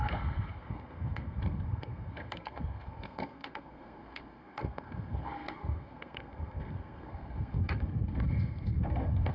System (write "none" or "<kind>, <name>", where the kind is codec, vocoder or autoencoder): codec, SNAC